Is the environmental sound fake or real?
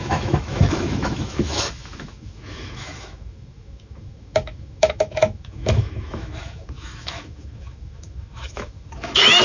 fake